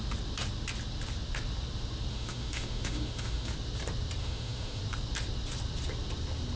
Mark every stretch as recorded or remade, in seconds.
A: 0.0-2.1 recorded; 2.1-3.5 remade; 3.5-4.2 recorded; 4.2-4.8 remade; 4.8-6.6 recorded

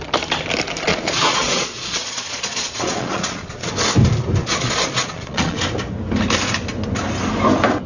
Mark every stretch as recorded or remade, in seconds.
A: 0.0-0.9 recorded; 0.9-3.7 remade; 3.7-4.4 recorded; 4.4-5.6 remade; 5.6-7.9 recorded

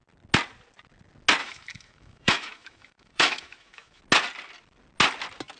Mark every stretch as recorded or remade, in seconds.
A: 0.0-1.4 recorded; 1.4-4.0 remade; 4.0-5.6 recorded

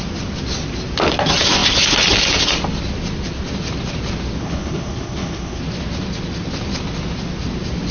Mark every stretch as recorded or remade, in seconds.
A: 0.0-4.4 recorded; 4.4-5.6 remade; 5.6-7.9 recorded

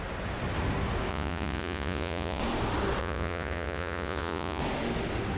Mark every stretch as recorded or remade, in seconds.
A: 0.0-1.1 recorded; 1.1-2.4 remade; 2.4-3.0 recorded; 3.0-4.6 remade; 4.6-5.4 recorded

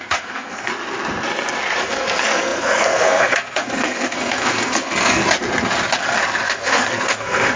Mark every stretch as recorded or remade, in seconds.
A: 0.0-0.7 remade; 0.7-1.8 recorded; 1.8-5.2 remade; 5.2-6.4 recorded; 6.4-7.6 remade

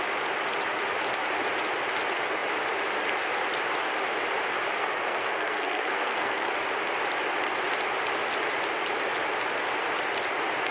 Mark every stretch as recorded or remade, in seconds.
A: 0.0-4.8 recorded; 4.8-6.5 remade; 6.5-10.7 recorded

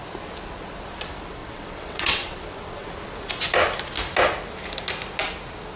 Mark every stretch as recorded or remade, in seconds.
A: 0.0-1.4 recorded; 1.4-2.9 remade; 2.9-5.8 recorded